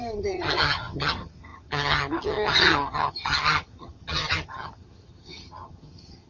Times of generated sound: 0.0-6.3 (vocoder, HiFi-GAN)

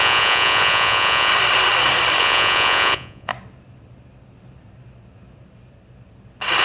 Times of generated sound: 0.0-1.3 (vocoder, Vocos); 2.2-3.3

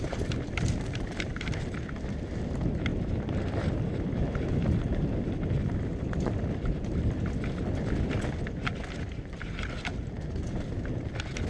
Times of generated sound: 2.9-7.9 (vocoder, BigVGAN v2); 9.9-10.5

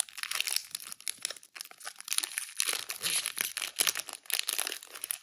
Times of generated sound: none

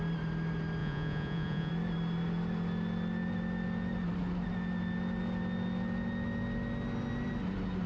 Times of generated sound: 0.8-1.7 (vocoder, Vocos)

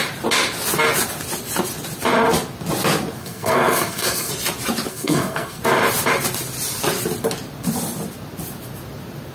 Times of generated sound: 3.2-4.3 (codec, SNAC); 4.9-5.6